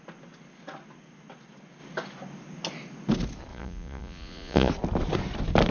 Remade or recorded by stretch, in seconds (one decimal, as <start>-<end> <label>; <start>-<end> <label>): 0.0-3.5 recorded; 3.5-4.7 remade; 4.7-5.7 recorded